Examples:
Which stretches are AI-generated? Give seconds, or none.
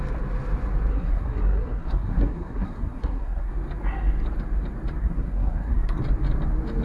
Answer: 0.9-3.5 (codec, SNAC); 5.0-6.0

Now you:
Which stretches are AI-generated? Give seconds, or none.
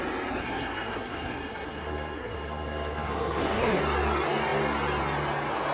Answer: 0.4-3.8 (codec, SNAC)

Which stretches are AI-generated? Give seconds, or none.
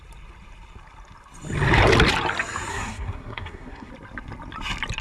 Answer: 2.7-3.9 (codec, SNAC)